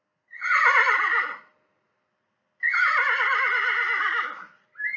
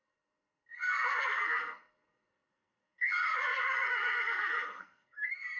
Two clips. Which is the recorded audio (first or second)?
first